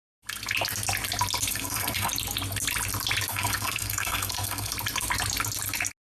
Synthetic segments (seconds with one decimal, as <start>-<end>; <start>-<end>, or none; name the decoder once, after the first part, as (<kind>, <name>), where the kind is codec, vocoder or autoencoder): 1.5-2.1 (codec, SNAC); 3.3-4.7